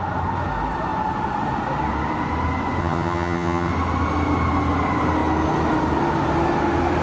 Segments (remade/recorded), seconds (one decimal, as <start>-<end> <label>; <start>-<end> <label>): 0.0-2.8 recorded; 2.8-3.7 remade; 3.7-7.0 recorded